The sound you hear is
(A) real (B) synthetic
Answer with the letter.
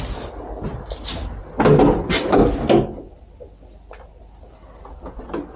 A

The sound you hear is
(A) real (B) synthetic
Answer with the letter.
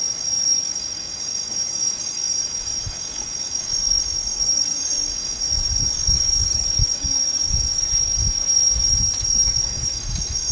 B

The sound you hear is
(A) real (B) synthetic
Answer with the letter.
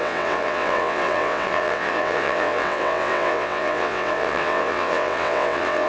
B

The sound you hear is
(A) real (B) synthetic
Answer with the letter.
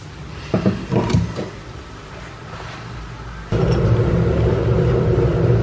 A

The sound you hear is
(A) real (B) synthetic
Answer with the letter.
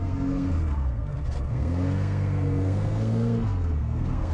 B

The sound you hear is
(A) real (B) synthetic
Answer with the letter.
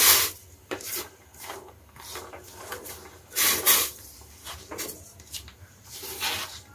B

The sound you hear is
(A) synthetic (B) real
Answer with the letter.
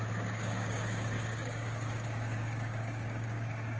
A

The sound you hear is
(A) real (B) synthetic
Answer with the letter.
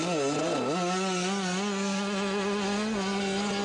A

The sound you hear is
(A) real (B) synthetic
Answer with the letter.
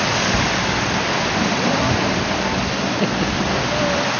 A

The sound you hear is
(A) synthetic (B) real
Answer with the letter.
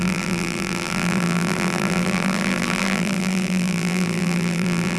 A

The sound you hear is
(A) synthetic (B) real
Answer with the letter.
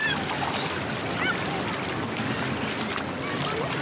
B